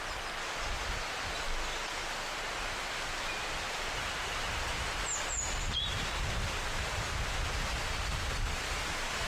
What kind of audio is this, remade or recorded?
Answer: recorded